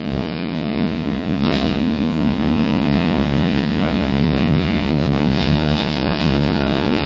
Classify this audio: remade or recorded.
remade